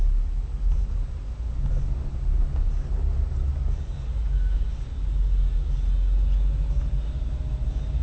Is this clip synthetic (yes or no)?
no